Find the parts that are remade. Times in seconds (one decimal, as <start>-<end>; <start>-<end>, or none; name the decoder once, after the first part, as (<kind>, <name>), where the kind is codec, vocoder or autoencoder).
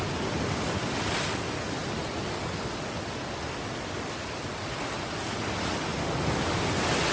none